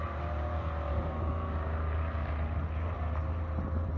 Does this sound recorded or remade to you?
recorded